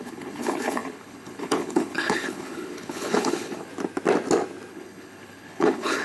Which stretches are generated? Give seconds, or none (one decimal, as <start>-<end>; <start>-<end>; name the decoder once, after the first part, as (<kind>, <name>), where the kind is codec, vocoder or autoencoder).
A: 0.0-3.7 (codec, HILCodec); 4.7-6.0